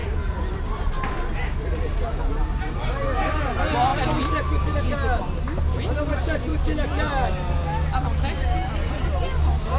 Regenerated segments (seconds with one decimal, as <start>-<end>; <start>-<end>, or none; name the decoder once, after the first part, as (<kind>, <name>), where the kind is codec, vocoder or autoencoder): 3.9-4.8 (vocoder, BigVGAN v2); 6.5-7.1